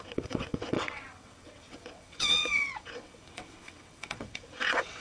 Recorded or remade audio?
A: remade